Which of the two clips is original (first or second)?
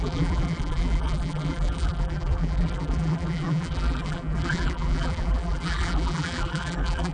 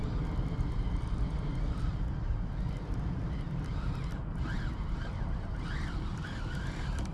second